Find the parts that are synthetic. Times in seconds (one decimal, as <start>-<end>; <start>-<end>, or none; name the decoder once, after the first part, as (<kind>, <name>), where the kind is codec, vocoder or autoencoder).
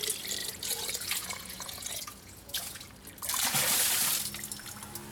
0.4-2.8 (vocoder, Vocos)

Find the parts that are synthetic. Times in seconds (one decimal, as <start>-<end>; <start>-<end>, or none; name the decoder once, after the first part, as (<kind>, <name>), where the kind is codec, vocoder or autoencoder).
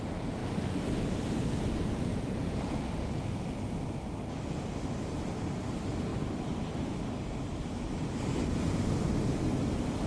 2.1-3.1 (vocoder, Vocos)